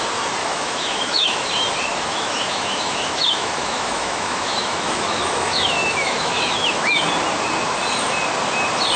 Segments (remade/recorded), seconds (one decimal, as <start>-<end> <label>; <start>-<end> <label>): 0.0-0.4 recorded; 0.4-1.5 remade; 1.5-1.9 recorded; 1.9-7.0 remade; 7.0-9.0 recorded